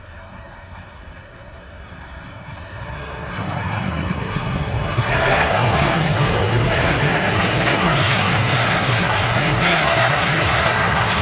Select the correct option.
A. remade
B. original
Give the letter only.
A